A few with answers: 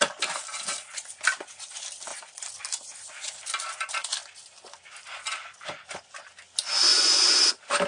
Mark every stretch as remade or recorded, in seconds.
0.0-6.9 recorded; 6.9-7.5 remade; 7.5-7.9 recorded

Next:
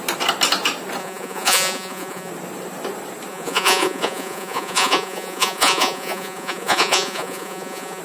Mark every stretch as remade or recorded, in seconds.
0.0-1.0 recorded; 1.0-2.3 remade; 2.3-3.3 recorded; 3.3-8.0 remade

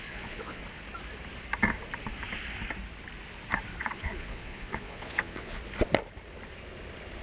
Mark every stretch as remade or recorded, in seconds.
0.0-0.6 remade; 0.6-3.8 recorded; 3.8-5.6 remade; 5.6-7.2 recorded

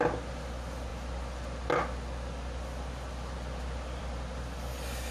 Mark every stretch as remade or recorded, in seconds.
0.0-5.1 recorded

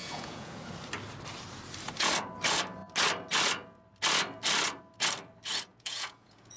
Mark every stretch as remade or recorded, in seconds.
0.0-0.6 remade; 0.6-5.7 recorded; 5.7-6.6 remade